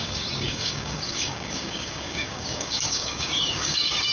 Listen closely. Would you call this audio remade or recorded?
remade